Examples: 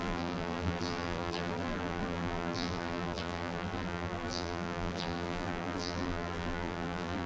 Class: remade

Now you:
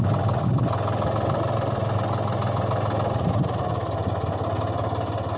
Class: recorded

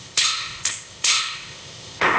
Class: remade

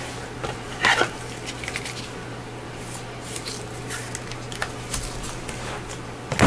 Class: recorded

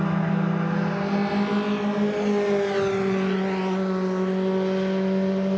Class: recorded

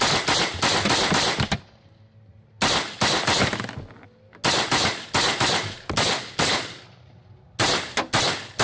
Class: recorded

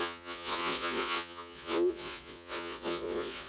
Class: remade